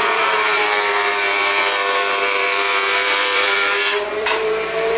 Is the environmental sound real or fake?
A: fake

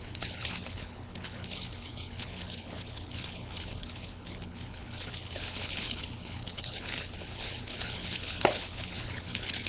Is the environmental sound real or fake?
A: fake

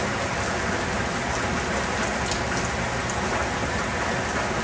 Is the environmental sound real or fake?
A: real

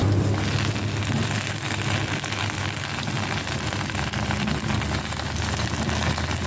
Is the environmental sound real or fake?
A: real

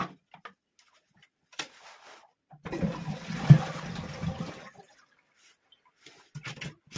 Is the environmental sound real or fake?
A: real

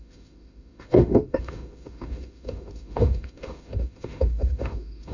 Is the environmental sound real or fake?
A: fake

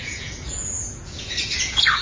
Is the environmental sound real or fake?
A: fake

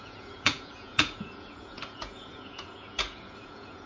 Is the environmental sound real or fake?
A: fake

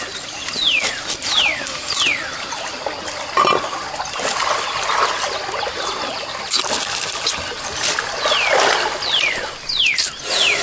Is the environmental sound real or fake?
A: real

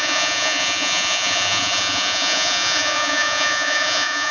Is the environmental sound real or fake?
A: fake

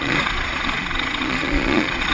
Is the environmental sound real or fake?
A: fake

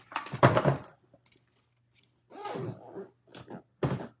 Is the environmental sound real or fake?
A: real